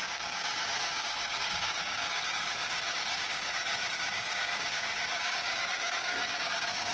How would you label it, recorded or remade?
remade